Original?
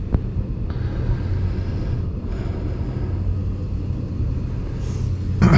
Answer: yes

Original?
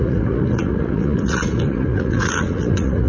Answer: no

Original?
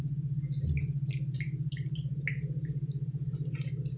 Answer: yes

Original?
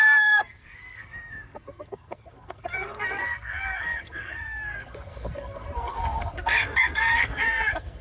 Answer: no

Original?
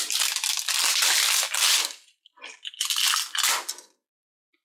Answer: yes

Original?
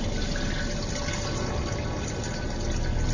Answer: yes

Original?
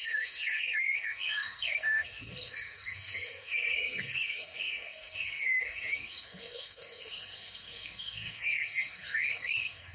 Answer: no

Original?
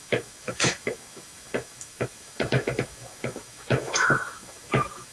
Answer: no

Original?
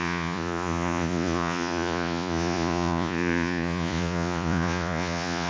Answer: no